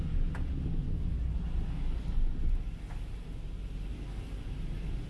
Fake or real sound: real